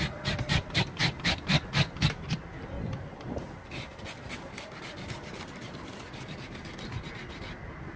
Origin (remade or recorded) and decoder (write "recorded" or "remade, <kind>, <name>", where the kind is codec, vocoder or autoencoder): recorded